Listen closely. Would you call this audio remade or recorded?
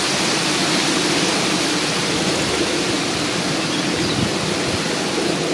recorded